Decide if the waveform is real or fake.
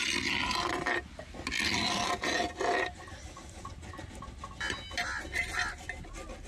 real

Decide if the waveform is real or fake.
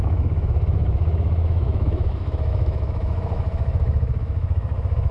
fake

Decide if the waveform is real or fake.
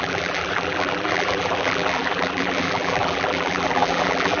fake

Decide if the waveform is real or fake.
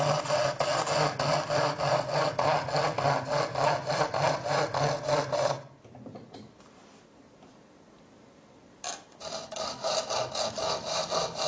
real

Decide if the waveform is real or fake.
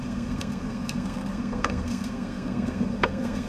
fake